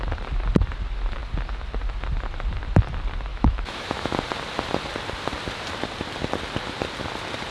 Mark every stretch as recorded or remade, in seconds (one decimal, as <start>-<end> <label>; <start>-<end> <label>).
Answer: 0.0-3.3 recorded; 3.3-4.1 remade; 4.1-7.5 recorded